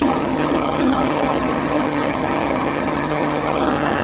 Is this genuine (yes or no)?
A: no